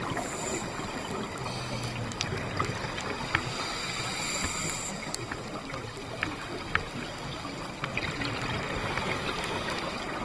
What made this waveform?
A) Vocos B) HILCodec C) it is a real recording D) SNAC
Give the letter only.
C